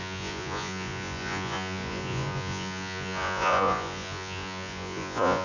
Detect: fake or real fake